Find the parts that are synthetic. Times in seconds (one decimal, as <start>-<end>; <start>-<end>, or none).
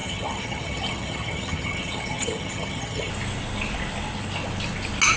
0.0-3.1